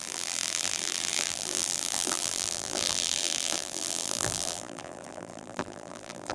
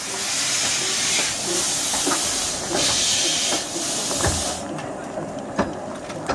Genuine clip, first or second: second